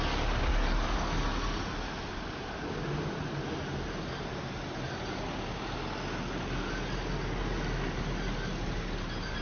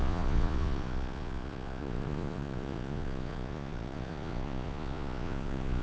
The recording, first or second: first